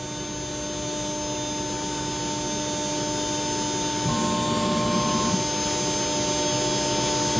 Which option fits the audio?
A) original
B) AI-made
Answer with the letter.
A